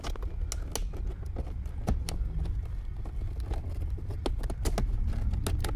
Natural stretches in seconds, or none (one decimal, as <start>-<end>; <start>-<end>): 0.0-5.8